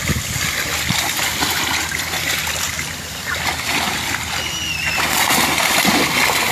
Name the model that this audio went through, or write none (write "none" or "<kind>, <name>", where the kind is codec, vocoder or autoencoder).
none